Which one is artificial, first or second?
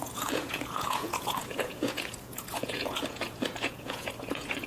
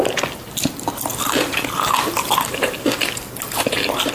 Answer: first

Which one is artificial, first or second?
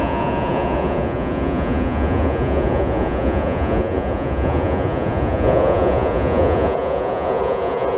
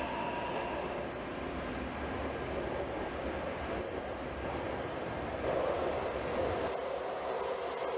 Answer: first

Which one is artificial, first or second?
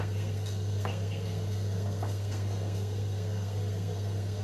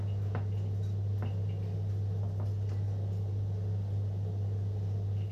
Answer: first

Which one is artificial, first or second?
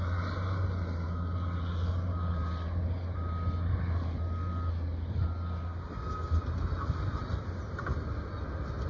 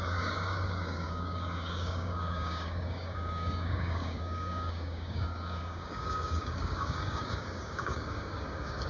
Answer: second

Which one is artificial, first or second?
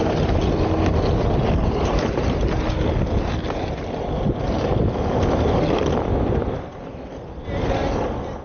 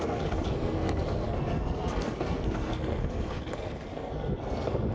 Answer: second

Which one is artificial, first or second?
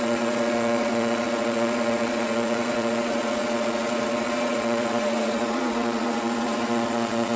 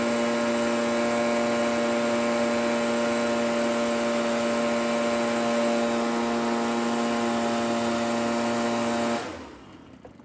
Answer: first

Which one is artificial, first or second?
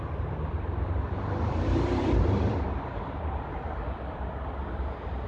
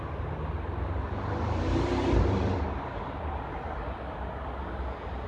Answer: first